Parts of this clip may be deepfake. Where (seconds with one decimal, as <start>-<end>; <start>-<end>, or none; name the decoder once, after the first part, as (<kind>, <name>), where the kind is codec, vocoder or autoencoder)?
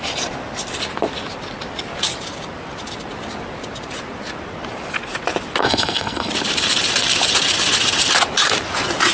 5.6-6.3 (codec, SNAC)